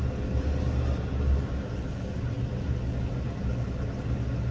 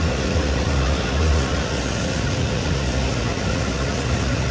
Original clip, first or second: first